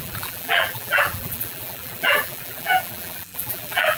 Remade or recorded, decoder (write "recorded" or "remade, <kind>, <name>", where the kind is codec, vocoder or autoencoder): remade, vocoder, BigVGAN v2